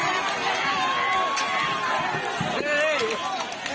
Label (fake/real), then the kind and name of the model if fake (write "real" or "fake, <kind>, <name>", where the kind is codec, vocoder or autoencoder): real